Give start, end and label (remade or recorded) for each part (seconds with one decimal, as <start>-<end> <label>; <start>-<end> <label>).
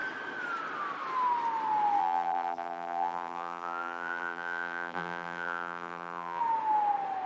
0.0-2.0 recorded; 2.0-6.4 remade; 6.4-7.3 recorded